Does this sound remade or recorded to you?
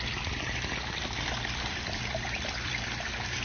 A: remade